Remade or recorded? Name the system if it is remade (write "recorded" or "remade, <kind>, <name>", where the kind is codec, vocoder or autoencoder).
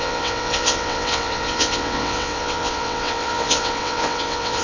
remade, vocoder, WaveNeXt